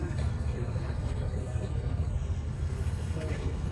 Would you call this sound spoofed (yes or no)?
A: yes